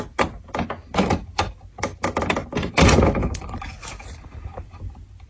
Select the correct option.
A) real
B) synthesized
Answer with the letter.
B